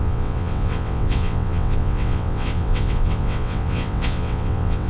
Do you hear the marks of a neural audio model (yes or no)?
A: yes